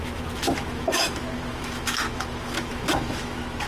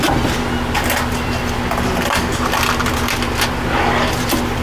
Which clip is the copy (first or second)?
first